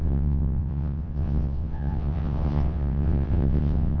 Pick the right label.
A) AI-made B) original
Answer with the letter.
A